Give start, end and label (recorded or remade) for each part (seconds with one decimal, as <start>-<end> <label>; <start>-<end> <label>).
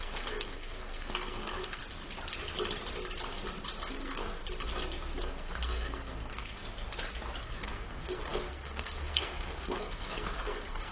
0.0-1.8 remade; 1.8-3.9 recorded; 3.9-4.4 remade; 4.4-5.2 recorded; 5.2-6.6 remade; 6.6-7.4 recorded; 7.4-10.9 remade